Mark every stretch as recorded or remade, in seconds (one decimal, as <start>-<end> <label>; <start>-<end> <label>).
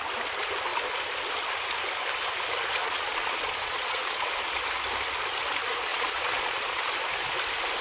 0.0-2.8 recorded; 2.8-4.3 remade; 4.3-5.9 recorded; 5.9-6.8 remade; 6.8-7.8 recorded